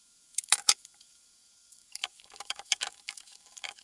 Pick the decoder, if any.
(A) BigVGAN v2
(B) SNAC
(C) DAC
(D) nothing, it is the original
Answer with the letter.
C